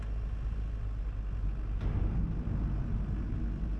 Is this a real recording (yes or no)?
yes